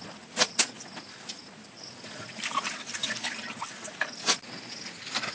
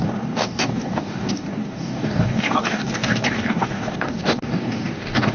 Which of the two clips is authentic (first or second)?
first